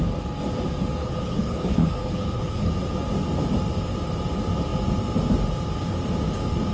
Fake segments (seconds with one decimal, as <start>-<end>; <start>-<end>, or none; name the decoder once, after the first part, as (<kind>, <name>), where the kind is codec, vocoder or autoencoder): 1.0-2.7 (codec, HILCodec)